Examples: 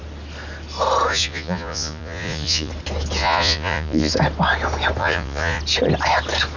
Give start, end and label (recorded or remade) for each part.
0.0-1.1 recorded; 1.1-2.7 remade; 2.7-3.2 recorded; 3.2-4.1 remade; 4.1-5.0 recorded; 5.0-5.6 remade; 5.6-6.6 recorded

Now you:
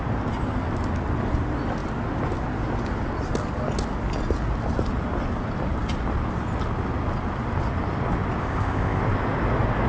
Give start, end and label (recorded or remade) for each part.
0.0-8.4 recorded; 8.4-9.0 remade; 9.0-9.9 recorded

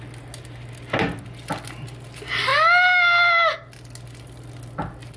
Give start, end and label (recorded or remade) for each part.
0.0-5.2 recorded

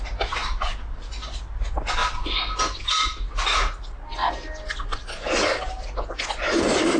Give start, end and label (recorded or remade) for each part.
0.0-7.0 recorded

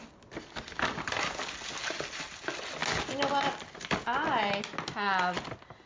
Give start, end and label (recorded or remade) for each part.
0.0-5.9 recorded

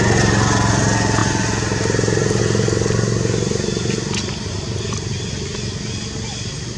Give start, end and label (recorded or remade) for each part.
0.0-6.8 recorded

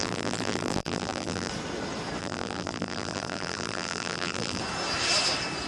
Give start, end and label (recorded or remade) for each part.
0.0-1.5 remade; 1.5-2.2 recorded; 2.2-4.6 remade; 4.6-5.7 recorded